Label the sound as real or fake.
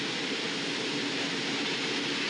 fake